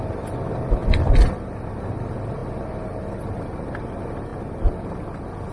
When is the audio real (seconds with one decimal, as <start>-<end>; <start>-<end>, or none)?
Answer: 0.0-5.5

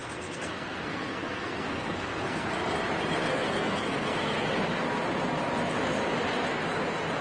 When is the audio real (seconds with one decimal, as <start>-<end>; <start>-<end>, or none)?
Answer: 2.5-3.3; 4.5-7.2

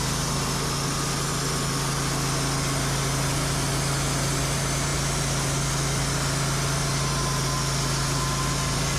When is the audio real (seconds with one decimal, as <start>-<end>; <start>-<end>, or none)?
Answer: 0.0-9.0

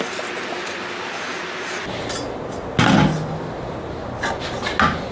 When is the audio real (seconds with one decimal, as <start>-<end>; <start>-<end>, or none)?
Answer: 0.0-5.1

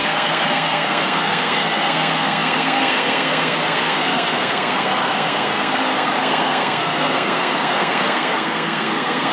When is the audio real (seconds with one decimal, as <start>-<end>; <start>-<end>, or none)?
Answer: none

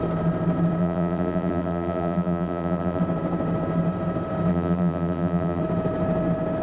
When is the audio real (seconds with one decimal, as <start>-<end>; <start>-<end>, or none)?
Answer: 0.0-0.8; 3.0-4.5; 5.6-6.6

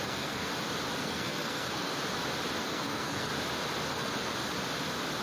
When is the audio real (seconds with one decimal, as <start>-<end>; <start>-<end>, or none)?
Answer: 0.5-1.0; 1.9-2.6; 3.3-3.9; 4.3-5.2

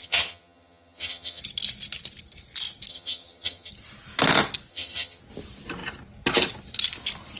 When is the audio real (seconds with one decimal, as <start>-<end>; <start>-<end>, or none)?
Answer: 1.4-2.9; 3.7-4.7; 5.2-7.4